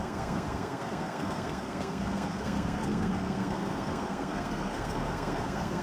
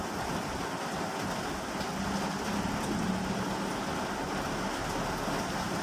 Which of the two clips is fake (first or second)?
first